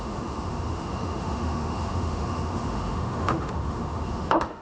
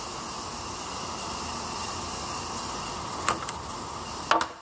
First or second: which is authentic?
second